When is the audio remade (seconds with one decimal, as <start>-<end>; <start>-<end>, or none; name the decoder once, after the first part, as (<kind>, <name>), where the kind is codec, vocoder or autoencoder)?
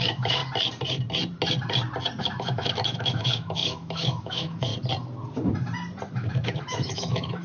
0.0-0.4 (autoencoder, DAC-VAE); 2.2-4.7; 6.1-7.4